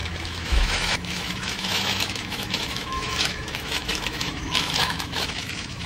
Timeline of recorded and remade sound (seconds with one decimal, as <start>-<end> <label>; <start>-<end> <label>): 0.0-5.9 remade